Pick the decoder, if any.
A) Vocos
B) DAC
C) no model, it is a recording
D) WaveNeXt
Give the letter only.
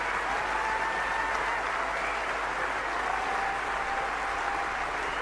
C